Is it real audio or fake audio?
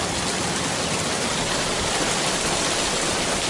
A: real